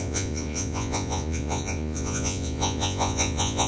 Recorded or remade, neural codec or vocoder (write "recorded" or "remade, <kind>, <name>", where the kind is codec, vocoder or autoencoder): remade, vocoder, Vocos